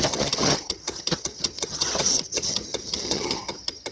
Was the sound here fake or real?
fake